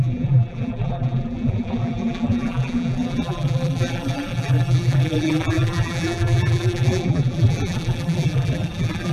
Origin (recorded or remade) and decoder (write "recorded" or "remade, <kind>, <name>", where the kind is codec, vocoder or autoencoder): remade, vocoder, BigVGAN v2